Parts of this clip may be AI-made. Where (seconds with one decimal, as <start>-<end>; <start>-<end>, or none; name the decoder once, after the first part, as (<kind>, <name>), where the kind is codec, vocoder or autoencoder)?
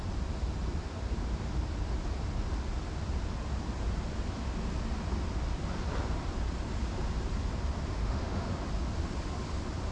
7.9-8.5 (autoencoder, DAC-VAE)